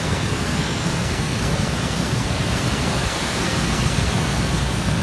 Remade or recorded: remade